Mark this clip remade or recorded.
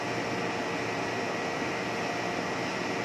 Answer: recorded